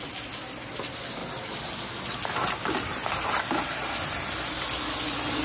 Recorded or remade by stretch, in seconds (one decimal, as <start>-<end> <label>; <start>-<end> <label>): 0.0-5.4 recorded